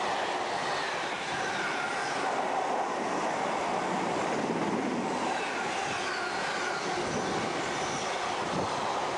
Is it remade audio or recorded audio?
recorded